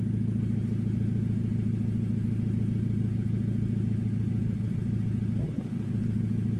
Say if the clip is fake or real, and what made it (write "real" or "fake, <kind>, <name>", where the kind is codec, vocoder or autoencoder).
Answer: real